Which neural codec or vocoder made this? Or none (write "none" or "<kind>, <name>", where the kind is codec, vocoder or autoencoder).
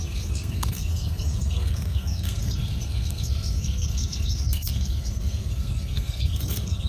codec, SNAC